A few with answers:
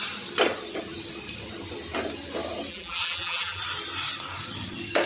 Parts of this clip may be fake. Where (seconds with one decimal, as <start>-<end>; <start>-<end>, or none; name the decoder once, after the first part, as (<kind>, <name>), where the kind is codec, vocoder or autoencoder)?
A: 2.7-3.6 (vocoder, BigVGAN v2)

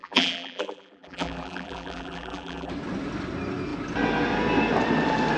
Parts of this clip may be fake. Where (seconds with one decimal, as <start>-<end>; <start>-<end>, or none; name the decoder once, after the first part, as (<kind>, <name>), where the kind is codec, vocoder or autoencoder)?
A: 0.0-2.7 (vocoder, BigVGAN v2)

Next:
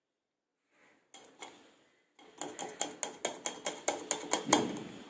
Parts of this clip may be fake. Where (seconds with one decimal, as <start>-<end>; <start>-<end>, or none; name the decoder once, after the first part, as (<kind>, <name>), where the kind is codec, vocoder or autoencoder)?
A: none

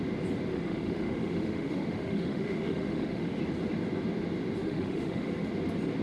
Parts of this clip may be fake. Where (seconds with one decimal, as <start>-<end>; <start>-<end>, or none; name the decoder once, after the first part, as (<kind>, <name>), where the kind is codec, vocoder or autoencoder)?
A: 0.5-3.4 (autoencoder, DAC-VAE); 4.6-5.3

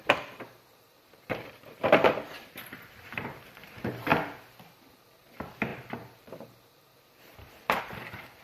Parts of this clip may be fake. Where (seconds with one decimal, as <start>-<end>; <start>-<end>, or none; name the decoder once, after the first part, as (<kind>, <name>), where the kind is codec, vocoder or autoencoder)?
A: 0.0-4.1 (vocoder, BigVGAN v2); 4.9-8.4